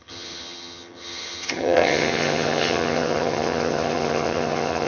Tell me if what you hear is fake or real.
fake